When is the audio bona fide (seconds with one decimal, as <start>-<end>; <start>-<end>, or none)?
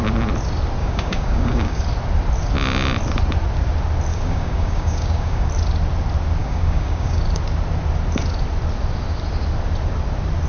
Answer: 0.0-0.8; 1.8-4.1; 5.5-6.4; 7.2-10.5